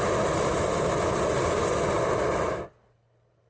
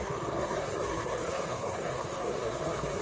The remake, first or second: second